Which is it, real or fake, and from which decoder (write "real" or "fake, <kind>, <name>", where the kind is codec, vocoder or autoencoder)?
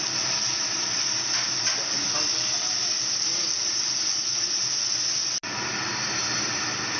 real